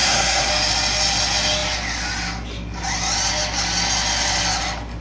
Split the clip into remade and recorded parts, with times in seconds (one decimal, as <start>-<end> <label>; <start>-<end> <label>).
0.0-0.5 remade; 0.5-5.0 recorded